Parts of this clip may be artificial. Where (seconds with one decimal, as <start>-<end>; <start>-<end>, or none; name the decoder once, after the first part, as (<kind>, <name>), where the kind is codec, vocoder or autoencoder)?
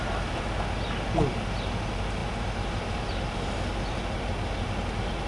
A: none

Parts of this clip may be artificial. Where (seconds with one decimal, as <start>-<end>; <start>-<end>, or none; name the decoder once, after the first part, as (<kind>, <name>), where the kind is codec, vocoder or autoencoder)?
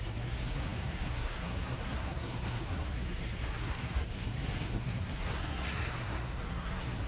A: 0.0-7.1 (codec, SNAC)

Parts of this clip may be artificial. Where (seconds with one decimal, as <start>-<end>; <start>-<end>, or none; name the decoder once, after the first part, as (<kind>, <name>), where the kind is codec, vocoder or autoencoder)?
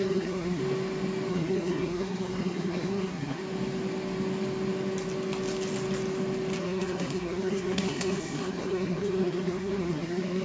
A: 0.0-0.6 (codec, SNAC); 1.3-3.4; 6.6-10.4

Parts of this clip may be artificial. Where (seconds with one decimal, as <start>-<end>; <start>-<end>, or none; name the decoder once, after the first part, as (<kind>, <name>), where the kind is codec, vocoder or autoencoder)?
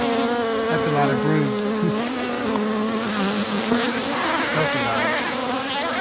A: none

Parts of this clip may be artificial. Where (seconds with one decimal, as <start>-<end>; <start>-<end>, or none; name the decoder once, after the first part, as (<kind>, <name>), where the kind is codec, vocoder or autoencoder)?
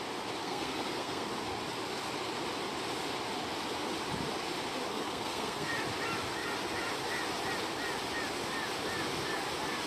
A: 0.4-1.3 (codec, SNAC); 4.9-5.7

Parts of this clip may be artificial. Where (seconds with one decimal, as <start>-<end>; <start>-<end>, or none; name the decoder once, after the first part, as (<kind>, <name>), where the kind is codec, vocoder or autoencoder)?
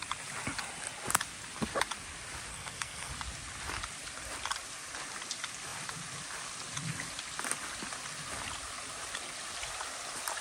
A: 2.5-3.1 (codec, SNAC)